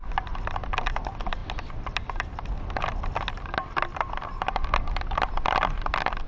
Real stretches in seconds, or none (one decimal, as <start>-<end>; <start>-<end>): 0.0-6.3